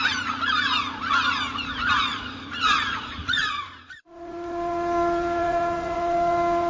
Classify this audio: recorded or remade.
remade